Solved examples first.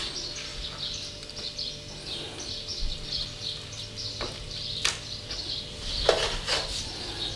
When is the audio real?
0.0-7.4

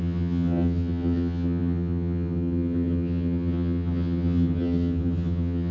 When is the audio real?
none

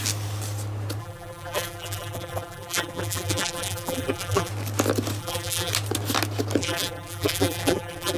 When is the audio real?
0.0-1.0; 4.5-5.2; 5.7-6.6

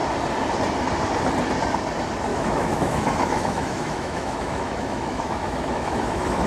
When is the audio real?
0.0-2.3

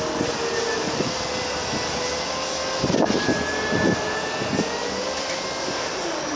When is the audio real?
0.0-6.4

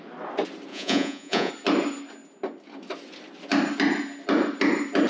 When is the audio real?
0.0-0.7; 1.5-5.1

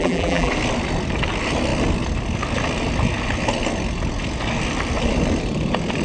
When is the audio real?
0.5-6.0

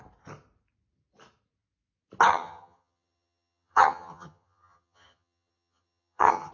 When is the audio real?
0.0-2.3